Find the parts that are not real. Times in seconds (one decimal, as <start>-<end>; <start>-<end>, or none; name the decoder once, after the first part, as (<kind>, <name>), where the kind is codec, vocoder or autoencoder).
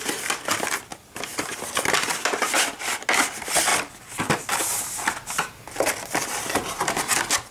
0.9-3.0 (vocoder, BigVGAN v2)